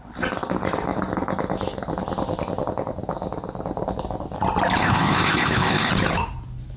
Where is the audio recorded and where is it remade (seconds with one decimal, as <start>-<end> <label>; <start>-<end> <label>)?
0.0-4.8 recorded; 4.8-5.9 remade; 5.9-6.8 recorded